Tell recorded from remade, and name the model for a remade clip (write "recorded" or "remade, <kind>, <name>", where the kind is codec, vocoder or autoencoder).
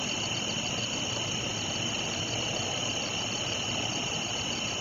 recorded